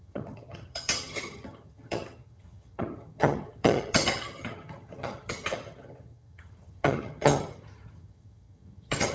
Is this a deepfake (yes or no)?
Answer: yes